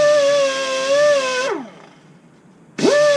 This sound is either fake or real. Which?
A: real